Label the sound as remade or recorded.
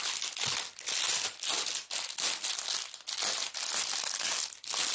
recorded